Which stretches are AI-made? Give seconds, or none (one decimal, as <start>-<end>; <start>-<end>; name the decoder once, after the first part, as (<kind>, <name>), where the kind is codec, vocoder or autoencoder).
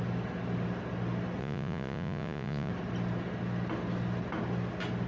1.4-2.7 (vocoder, Vocos)